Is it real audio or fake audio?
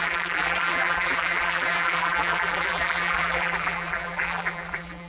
fake